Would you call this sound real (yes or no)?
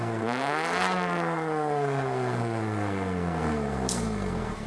no